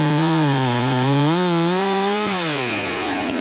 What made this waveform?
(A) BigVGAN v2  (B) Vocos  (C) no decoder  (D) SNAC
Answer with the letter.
B